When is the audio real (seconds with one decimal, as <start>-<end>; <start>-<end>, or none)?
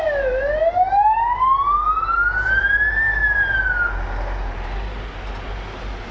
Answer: 0.0-3.2; 3.7-6.1